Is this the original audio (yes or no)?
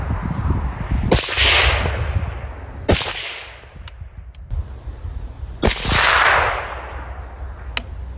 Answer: yes